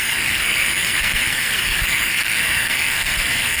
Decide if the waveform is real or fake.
fake